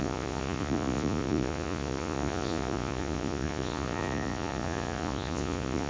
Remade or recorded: remade